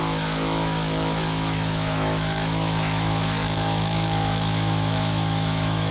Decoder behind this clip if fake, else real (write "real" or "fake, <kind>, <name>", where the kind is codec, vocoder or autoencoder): fake, autoencoder, DAC-VAE